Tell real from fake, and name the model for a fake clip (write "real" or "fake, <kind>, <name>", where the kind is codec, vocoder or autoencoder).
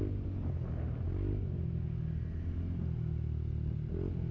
real